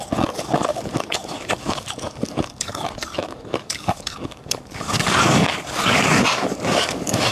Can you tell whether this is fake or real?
fake